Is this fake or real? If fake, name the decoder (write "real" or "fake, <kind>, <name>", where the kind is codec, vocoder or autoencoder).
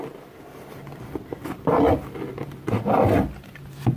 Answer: real